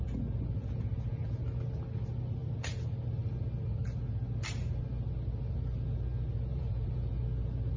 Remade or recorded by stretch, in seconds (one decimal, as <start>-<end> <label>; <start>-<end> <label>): 0.0-0.6 recorded; 0.6-1.4 remade; 1.4-6.5 recorded; 6.5-7.2 remade; 7.2-7.8 recorded